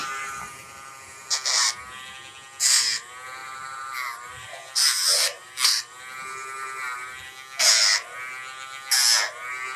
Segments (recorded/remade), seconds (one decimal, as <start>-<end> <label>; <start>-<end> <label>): 0.0-1.3 remade; 1.3-3.4 recorded; 3.4-5.5 remade; 5.5-9.8 recorded